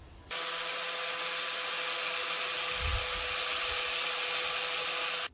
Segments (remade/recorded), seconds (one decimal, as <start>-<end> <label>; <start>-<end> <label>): 0.0-5.3 recorded